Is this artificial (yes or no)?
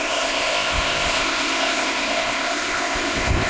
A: yes